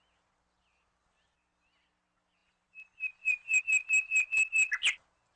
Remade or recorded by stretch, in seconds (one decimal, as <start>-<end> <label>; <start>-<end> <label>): 0.0-2.4 recorded; 2.4-3.6 remade; 3.6-5.4 recorded

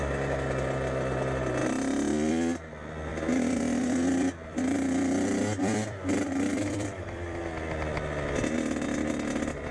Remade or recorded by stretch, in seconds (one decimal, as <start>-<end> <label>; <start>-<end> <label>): 0.0-3.1 recorded; 3.1-7.4 remade; 7.4-9.7 recorded

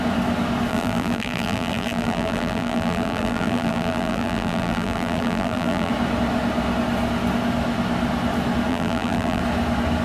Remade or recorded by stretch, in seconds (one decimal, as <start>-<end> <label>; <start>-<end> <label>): 0.0-0.7 recorded; 0.7-5.9 remade; 5.9-8.7 recorded; 8.7-9.4 remade; 9.4-10.0 recorded

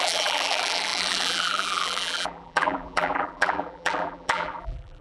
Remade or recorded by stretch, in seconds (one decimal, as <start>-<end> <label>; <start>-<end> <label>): 0.0-5.0 remade

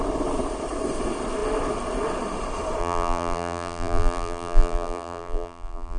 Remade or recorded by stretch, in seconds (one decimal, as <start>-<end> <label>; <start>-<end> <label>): 0.0-2.8 recorded; 2.8-6.0 remade